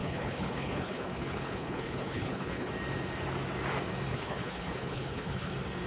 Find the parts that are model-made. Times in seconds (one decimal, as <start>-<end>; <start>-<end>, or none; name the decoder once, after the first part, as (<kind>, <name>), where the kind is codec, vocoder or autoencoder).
0.0-2.7 (codec, HILCodec); 4.1-5.5